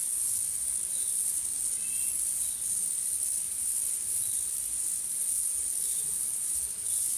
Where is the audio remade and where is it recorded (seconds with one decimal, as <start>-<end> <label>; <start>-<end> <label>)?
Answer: 0.0-7.2 recorded